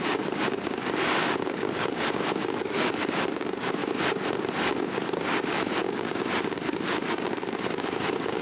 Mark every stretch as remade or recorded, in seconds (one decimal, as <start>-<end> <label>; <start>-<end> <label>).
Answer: 0.0-3.8 remade; 3.8-4.8 recorded; 4.8-8.4 remade